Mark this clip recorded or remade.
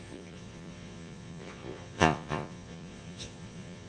remade